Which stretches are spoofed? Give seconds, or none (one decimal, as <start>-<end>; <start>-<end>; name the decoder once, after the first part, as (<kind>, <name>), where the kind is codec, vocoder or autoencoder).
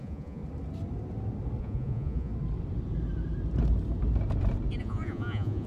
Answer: 0.0-0.4 (vocoder, Vocos); 1.6-2.3; 4.8-5.7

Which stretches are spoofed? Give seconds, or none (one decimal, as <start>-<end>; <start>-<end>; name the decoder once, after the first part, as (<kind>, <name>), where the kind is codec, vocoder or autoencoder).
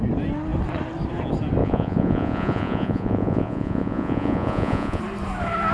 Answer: 1.6-5.0 (vocoder, Vocos)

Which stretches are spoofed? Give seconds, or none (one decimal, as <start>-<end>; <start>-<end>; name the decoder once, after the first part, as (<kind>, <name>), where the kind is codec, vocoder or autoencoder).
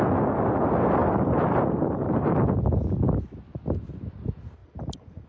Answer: 1.0-2.6 (vocoder, BigVGAN v2); 4.6-5.3